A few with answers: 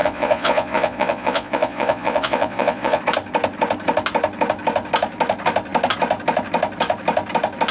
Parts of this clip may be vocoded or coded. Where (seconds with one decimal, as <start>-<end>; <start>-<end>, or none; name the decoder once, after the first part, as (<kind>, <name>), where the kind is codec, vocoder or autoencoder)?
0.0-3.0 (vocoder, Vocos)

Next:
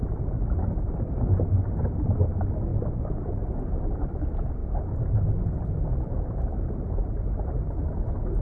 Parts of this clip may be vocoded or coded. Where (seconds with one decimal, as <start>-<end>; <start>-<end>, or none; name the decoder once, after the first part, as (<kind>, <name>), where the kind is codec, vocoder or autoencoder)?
none

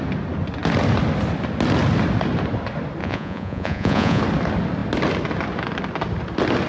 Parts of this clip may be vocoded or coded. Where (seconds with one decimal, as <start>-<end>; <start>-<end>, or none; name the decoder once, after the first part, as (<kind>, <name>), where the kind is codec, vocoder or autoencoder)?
3.0-4.2 (vocoder, Vocos)